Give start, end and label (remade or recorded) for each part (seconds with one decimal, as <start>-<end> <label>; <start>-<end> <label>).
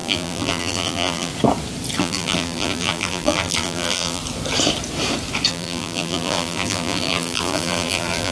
0.0-1.3 remade; 1.3-2.0 recorded; 2.0-4.2 remade; 4.2-5.5 recorded; 5.5-8.3 remade